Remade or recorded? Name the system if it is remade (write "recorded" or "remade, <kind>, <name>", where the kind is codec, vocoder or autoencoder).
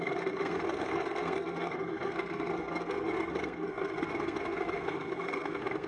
remade, codec, SNAC